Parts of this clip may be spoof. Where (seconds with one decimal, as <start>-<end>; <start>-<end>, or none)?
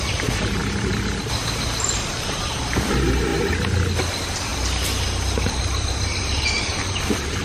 0.0-0.6; 2.6-3.3; 4.0-4.5; 6.4-7.4